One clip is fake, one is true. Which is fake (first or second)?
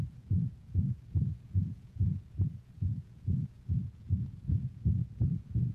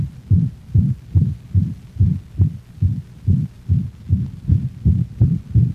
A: first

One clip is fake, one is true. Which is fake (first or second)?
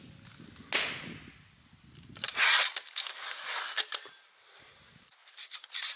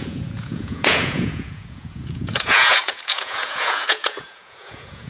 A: second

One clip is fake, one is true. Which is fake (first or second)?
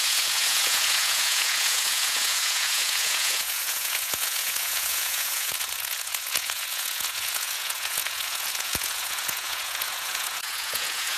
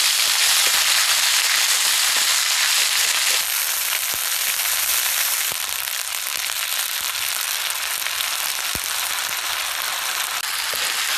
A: first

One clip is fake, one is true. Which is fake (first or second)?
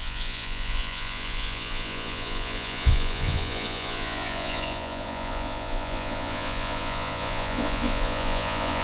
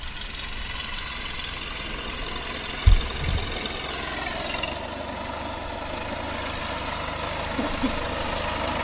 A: first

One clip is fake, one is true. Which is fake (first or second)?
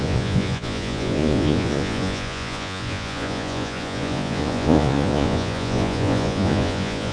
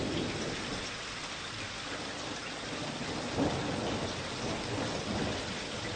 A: first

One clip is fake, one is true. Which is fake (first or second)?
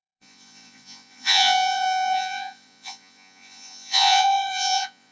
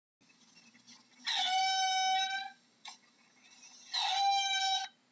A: first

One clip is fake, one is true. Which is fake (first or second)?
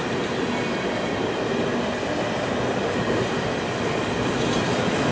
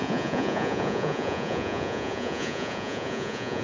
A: second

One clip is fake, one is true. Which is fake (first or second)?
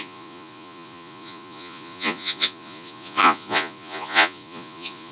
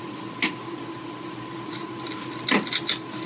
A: first